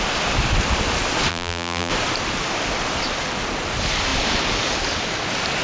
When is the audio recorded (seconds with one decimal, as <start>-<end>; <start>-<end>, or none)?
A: 0.0-1.3; 1.9-5.6